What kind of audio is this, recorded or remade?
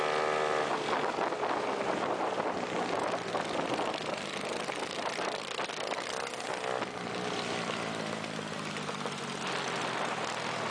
recorded